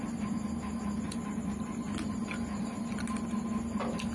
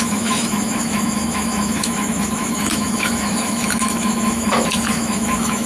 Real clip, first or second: first